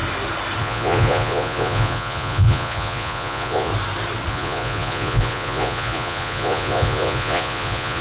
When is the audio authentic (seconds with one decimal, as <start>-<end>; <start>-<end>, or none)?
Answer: 0.0-0.6; 3.7-4.3